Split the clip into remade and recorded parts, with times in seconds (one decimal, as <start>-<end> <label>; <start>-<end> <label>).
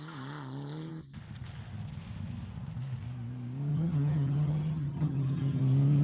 0.0-3.7 recorded; 3.7-5.6 remade; 5.6-6.0 recorded